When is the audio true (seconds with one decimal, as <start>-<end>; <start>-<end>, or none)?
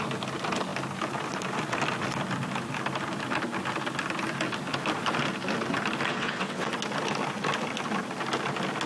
0.0-6.1; 6.7-8.9